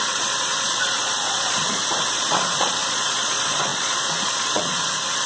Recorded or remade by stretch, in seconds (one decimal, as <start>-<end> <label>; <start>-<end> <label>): 0.0-1.8 remade; 1.8-2.3 recorded; 2.3-5.3 remade